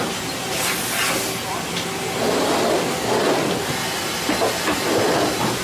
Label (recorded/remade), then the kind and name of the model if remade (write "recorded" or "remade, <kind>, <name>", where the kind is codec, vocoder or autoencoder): recorded